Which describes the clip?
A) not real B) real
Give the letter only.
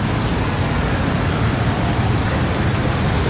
B